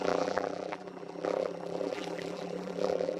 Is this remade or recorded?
remade